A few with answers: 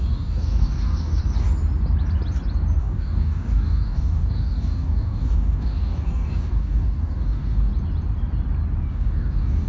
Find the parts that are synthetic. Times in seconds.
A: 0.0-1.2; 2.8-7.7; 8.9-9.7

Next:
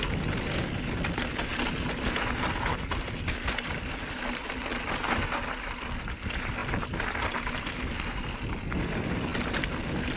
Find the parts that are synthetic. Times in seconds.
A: none